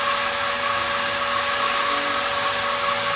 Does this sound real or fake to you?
real